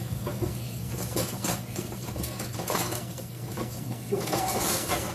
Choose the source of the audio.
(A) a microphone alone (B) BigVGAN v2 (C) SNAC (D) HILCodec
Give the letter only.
C